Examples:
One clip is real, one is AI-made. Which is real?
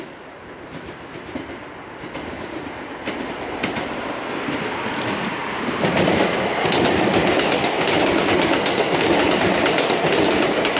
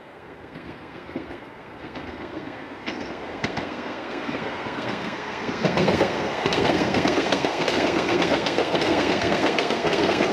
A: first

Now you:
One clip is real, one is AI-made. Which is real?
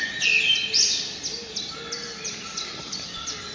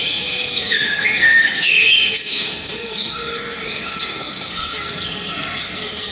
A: first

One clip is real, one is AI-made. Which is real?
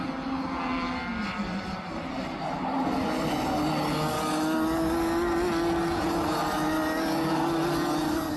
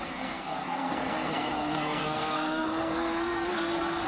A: first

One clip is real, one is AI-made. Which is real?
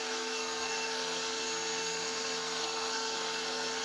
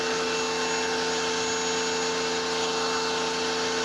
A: second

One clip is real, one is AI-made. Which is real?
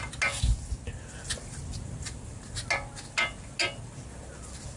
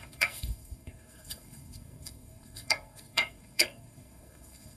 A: first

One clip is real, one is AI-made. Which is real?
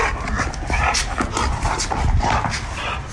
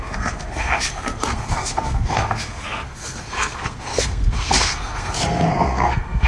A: first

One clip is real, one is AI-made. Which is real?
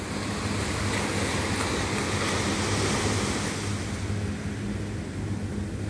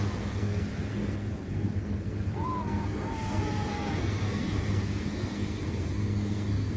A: first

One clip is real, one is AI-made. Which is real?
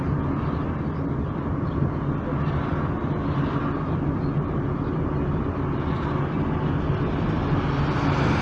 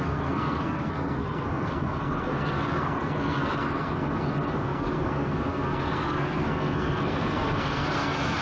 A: first